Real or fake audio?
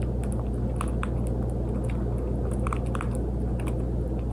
real